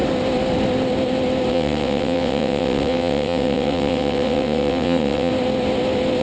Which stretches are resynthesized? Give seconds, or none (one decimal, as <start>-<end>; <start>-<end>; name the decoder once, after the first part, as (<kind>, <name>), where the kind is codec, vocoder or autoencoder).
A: 1.5-5.3 (vocoder, WaveNeXt)